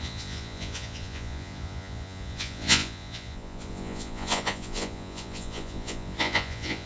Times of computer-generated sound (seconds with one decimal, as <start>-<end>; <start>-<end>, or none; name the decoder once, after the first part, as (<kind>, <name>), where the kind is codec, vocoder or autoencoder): 0.0-6.9 (vocoder, Vocos)